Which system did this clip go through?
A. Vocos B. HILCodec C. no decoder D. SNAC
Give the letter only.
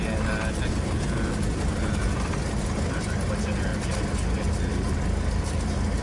C